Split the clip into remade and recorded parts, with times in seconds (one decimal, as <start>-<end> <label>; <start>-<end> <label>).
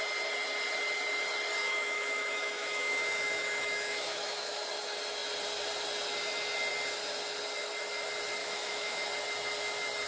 0.0-1.6 recorded; 1.6-4.6 remade; 4.6-8.4 recorded; 8.4-9.1 remade; 9.1-10.1 recorded